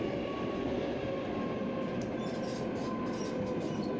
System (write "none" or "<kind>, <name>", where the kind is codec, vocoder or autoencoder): none